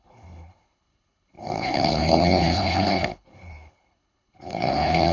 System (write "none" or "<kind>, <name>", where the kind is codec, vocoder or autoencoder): codec, HILCodec